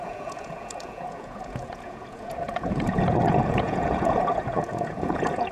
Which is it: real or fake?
fake